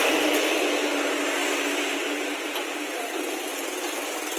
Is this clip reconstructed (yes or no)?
no